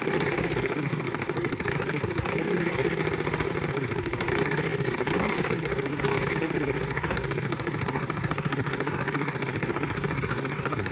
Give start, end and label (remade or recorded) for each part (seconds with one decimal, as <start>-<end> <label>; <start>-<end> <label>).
0.0-3.0 remade; 3.0-3.7 recorded; 3.7-10.9 remade